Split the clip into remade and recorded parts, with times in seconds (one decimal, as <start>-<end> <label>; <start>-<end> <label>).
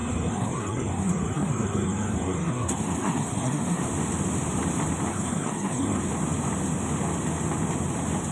0.0-3.8 remade; 3.8-5.1 recorded; 5.1-6.0 remade; 6.0-8.3 recorded